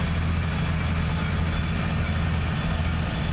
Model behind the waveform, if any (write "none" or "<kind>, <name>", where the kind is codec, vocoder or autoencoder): none